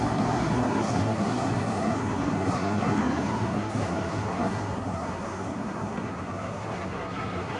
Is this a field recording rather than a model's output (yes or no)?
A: no